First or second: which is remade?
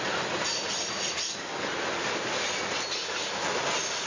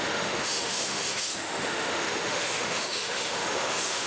second